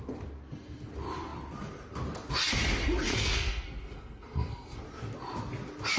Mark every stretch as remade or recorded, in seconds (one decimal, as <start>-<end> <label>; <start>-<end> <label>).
0.0-3.1 recorded; 3.1-4.8 remade; 4.8-6.0 recorded